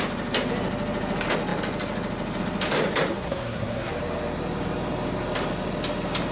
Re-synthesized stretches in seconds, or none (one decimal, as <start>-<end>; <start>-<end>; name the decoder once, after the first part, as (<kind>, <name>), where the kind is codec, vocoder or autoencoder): 3.1-3.9 (codec, SNAC)